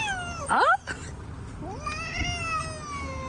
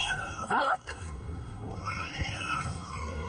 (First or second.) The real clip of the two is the first